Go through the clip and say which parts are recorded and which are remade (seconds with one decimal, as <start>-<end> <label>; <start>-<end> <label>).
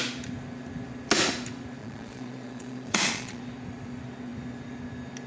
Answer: 0.0-1.8 recorded; 1.8-3.4 remade; 3.4-5.3 recorded